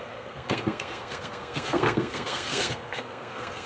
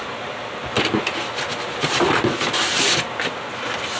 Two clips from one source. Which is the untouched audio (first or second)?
second